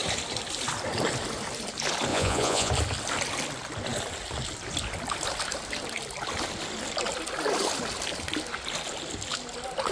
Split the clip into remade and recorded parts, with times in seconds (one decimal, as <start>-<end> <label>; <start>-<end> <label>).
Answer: 0.0-2.1 recorded; 2.1-2.7 remade; 2.7-9.9 recorded